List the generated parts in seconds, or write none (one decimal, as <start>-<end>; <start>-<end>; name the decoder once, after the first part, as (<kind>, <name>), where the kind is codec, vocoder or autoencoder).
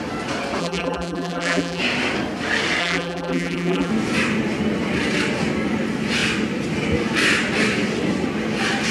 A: 0.6-1.8 (vocoder, BigVGAN v2); 2.8-3.9